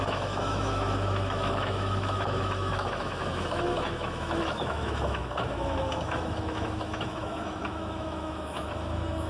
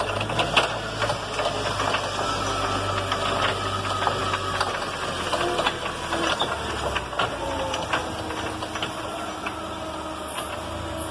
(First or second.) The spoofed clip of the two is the first